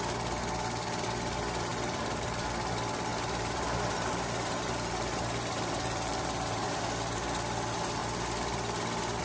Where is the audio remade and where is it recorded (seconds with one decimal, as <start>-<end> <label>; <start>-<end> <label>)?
0.0-1.7 recorded; 1.7-2.5 remade; 2.5-3.1 recorded; 3.1-6.8 remade; 6.8-9.2 recorded